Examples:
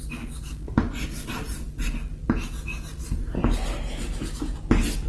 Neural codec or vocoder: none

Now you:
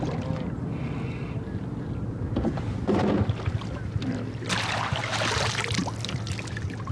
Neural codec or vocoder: none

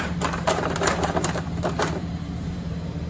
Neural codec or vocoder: vocoder, BigVGAN v2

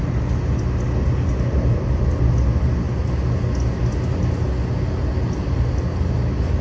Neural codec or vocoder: none